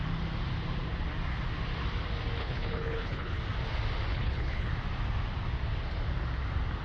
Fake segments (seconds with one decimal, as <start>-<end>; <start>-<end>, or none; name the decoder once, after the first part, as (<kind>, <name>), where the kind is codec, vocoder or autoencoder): 2.4-3.4 (codec, HILCodec); 4.1-4.7